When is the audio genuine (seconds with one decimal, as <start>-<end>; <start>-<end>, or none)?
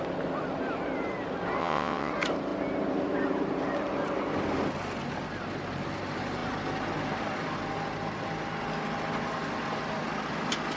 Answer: 0.0-1.6; 2.1-10.8